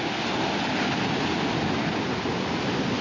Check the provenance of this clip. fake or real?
real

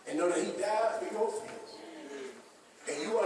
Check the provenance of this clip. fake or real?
fake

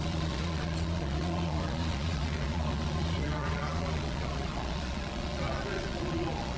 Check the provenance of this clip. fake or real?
fake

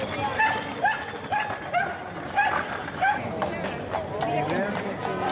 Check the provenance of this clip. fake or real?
real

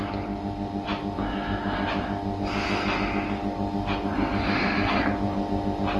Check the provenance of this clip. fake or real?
real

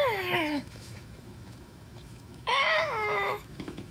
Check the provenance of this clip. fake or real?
fake